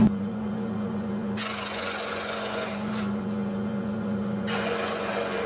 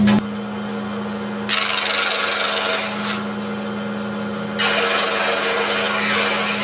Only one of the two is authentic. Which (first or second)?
second